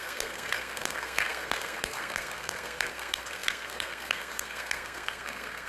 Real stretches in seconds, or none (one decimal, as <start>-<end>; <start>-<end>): none